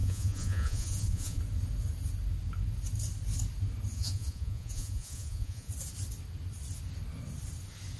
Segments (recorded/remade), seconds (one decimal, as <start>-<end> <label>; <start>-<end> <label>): 0.0-1.4 remade; 1.4-3.9 recorded; 3.9-5.7 remade; 5.7-8.0 recorded